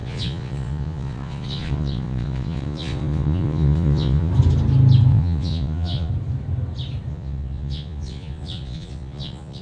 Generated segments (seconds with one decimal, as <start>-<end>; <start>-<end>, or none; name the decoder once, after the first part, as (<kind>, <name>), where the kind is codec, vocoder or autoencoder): 0.0-4.3 (vocoder, Vocos); 5.1-6.1; 7.1-9.6